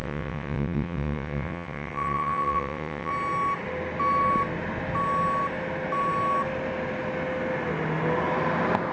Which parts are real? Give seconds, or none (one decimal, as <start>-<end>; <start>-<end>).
3.1-8.9